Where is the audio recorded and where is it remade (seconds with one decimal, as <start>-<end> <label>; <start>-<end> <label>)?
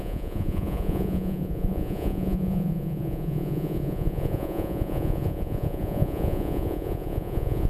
0.0-7.7 remade